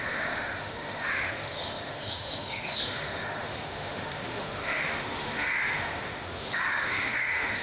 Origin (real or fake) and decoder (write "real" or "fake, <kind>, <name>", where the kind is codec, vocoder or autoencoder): fake, autoencoder, DAC-VAE